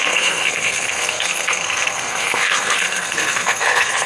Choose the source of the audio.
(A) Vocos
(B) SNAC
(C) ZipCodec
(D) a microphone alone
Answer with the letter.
B